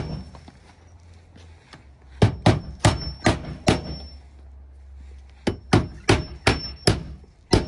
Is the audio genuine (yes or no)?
yes